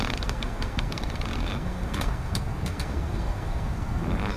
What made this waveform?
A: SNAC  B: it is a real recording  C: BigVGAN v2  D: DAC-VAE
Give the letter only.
A